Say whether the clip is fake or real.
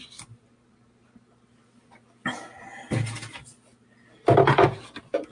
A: real